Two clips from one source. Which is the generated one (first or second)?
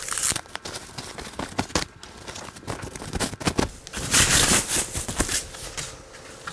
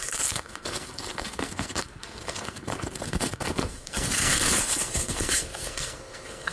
second